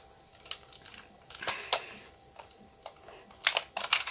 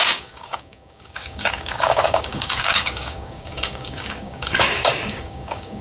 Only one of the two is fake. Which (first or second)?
second